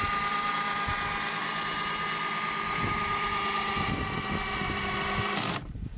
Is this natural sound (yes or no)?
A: yes